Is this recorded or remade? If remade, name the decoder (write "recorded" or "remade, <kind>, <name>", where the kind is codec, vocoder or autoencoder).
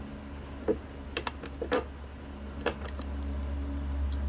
recorded